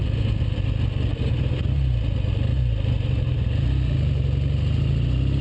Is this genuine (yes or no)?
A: yes